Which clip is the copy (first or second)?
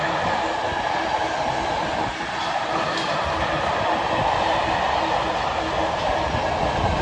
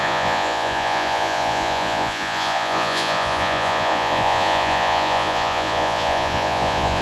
second